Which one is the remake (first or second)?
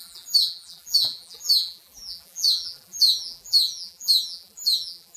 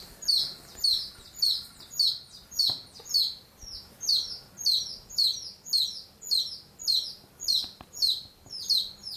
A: first